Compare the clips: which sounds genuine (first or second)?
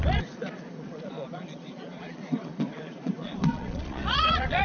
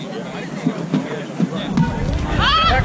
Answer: second